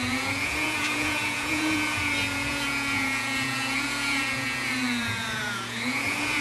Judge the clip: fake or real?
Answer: fake